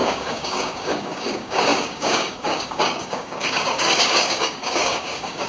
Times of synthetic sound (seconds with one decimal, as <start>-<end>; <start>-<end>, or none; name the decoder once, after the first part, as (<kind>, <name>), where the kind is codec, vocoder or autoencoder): 0.0-5.5 (codec, DAC)